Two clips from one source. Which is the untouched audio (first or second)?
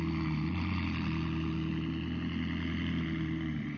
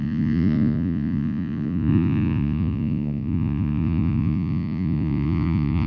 first